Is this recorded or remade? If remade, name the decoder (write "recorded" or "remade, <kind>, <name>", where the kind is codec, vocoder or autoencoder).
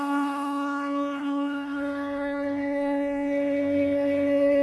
remade, codec, SNAC